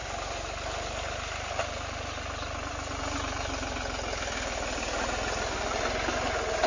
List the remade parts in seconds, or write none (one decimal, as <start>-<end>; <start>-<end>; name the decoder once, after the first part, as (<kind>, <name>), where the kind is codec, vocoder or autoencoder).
0.0-3.0 (vocoder, BigVGAN v2)